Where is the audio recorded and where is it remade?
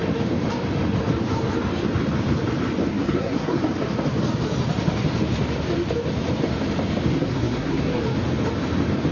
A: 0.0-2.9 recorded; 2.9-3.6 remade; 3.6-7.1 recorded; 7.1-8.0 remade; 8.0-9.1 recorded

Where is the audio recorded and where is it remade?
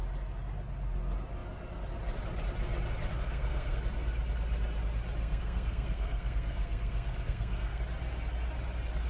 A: 0.0-3.1 recorded; 3.1-3.8 remade; 3.8-5.2 recorded; 5.2-7.8 remade; 7.8-9.1 recorded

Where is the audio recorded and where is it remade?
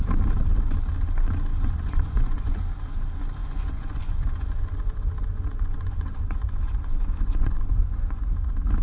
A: 0.0-1.5 recorded; 1.5-2.6 remade; 2.6-3.4 recorded; 3.4-8.2 remade; 8.2-8.8 recorded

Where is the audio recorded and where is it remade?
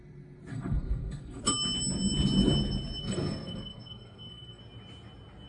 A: 0.0-0.5 recorded; 0.5-1.4 remade; 1.4-3.0 recorded; 3.0-4.6 remade; 4.6-5.5 recorded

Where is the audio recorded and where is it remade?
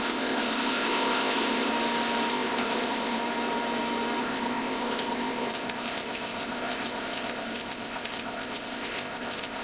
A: 0.0-1.7 remade; 1.7-2.3 recorded; 2.3-3.2 remade; 3.2-4.2 recorded; 4.2-9.6 remade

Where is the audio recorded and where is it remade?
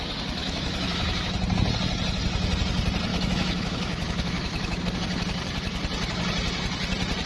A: 0.0-0.4 recorded; 0.4-1.3 remade; 1.3-3.1 recorded; 3.1-4.8 remade; 4.8-7.3 recorded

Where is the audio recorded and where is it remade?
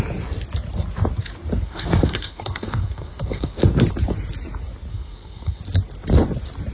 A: 0.0-1.6 recorded; 1.6-3.6 remade; 3.6-4.9 recorded; 4.9-5.6 remade; 5.6-6.7 recorded